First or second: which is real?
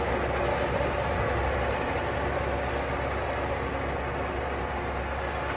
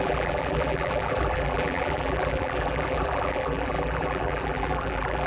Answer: first